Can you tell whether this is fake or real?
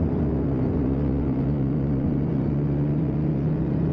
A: fake